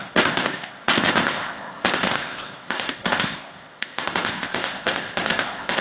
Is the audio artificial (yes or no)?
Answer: yes